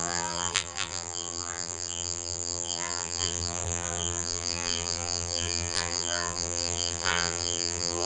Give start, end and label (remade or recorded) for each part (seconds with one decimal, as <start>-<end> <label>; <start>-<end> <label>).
0.0-8.1 remade